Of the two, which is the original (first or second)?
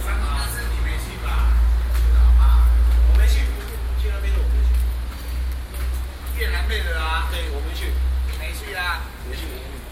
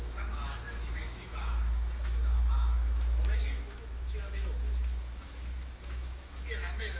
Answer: first